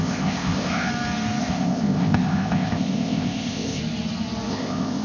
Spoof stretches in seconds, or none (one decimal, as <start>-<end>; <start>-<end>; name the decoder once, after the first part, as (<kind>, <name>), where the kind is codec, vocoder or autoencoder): 0.0-0.9 (codec, ZipCodec); 1.4-3.8; 4.5-5.0